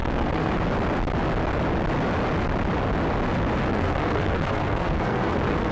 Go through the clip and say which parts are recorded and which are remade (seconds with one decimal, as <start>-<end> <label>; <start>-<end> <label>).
0.0-0.5 remade; 0.5-3.7 recorded; 3.7-5.7 remade